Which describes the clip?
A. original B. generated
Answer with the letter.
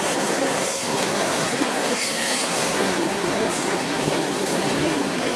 B